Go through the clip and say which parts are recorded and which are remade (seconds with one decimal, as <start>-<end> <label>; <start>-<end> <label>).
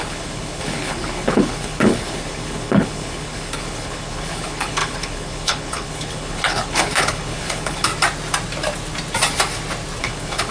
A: 0.0-7.9 remade; 7.9-10.0 recorded; 10.0-10.5 remade